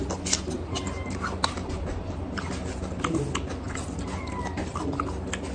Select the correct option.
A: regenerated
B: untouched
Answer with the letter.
B